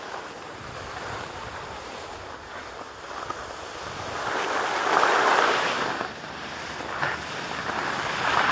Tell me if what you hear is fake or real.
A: real